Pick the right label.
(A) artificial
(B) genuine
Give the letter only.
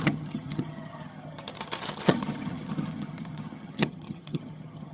A